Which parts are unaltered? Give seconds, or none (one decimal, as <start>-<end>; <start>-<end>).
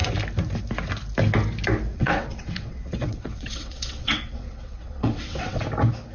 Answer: 0.0-1.9; 5.6-6.1